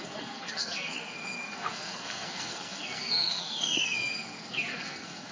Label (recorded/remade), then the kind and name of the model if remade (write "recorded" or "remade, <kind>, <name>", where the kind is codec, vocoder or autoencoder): remade, codec, SNAC